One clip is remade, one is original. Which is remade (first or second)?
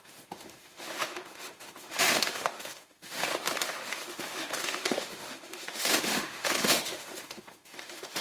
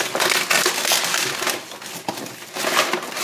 first